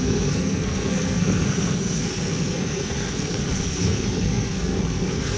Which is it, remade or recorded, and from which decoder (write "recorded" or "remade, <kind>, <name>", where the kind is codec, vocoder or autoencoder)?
remade, codec, SNAC